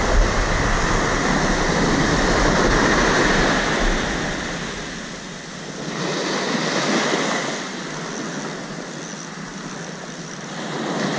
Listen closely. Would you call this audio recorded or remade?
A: recorded